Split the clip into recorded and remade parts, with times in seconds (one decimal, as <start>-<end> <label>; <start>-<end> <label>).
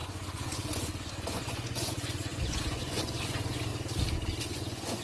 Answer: 0.0-3.7 remade; 3.7-4.4 recorded; 4.4-5.0 remade